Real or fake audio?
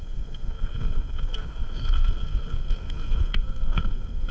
fake